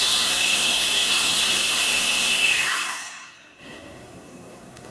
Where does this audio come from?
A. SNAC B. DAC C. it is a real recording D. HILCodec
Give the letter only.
A